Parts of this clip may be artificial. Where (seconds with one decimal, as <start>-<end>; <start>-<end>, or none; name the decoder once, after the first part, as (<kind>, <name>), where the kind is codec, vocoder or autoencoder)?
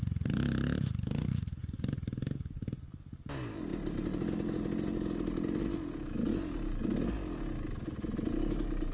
none